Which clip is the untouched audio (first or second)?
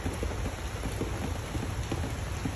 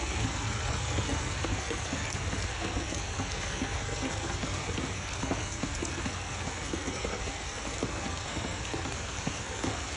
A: first